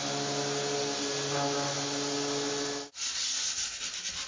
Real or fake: real